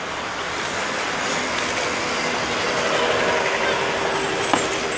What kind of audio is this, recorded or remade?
recorded